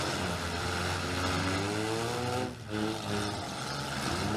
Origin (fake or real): real